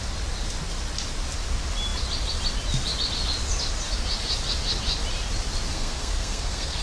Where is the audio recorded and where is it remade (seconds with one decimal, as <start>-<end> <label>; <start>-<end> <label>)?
0.0-5.7 recorded; 5.7-6.8 remade